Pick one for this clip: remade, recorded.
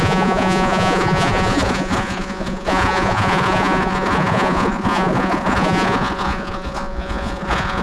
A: remade